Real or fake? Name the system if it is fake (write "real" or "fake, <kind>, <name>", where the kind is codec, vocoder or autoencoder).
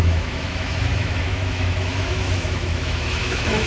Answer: fake, autoencoder, DAC-VAE